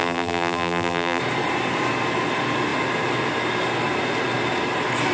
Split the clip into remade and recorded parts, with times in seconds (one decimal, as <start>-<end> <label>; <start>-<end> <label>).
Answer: 0.0-1.2 remade; 1.2-5.1 recorded